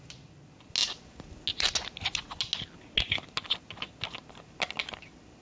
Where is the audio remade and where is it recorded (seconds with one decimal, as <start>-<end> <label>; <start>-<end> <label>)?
0.0-5.4 recorded